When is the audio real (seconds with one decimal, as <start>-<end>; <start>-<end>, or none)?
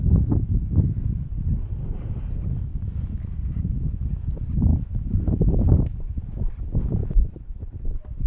0.0-2.7; 4.1-4.7; 6.1-8.3